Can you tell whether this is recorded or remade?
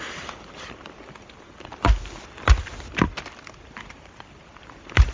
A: recorded